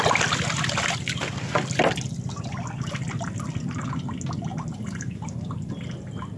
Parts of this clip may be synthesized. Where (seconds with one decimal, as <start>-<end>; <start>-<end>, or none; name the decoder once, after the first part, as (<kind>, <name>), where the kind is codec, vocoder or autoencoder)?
4.5-5.7 (vocoder, BigVGAN v2)

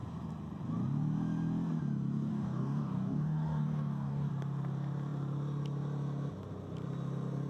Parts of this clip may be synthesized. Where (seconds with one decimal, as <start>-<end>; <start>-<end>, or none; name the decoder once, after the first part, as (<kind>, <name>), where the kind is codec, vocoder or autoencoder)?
2.3-4.3 (codec, DAC)